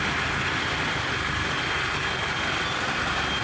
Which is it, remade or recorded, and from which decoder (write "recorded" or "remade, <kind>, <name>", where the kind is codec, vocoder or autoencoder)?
recorded